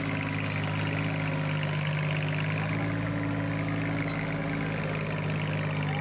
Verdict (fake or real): real